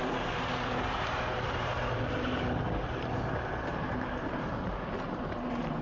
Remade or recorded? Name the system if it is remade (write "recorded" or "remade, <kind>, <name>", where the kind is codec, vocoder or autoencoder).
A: remade, vocoder, BigVGAN v2